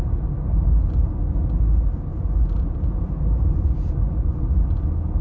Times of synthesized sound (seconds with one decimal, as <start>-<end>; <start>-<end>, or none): 2.1-4.4